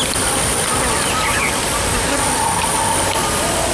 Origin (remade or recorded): recorded